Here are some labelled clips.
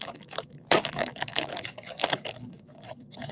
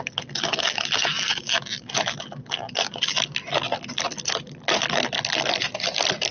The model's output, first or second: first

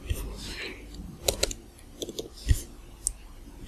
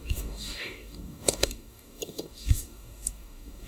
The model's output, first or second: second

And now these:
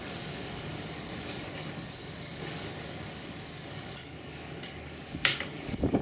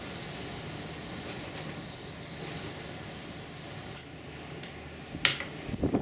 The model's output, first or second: first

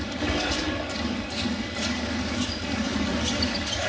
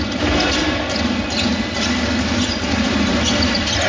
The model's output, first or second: first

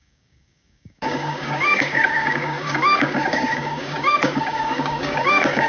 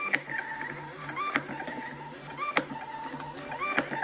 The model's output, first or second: first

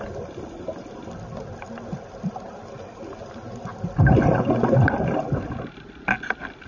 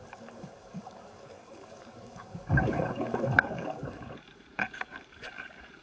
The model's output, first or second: second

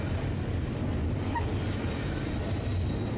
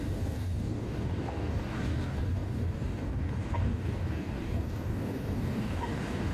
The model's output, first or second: second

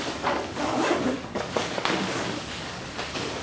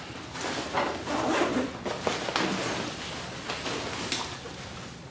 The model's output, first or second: first